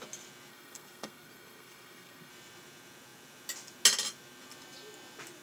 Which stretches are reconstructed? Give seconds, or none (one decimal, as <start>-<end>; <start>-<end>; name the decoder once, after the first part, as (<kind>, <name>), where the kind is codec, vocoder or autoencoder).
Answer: 0.5-2.3 (codec, SNAC)